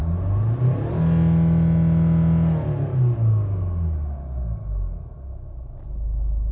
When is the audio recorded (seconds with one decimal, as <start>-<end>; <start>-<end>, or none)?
0.0-6.5